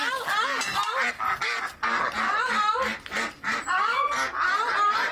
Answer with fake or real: real